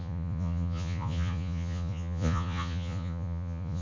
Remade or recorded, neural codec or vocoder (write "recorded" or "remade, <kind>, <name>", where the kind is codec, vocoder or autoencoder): remade, vocoder, Vocos